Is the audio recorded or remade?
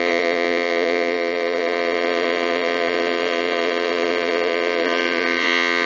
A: remade